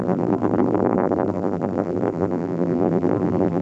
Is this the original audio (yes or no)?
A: no